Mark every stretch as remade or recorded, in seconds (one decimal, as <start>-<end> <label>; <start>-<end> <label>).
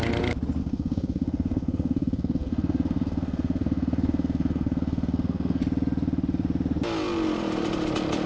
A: 0.0-0.6 recorded; 0.6-5.6 remade; 5.6-8.3 recorded